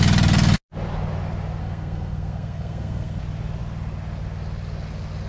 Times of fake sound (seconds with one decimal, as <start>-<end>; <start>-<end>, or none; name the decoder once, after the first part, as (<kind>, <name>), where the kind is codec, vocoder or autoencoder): 1.6-3.2 (codec, SNAC)